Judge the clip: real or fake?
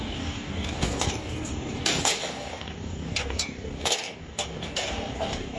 fake